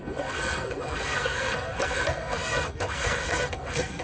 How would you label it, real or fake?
fake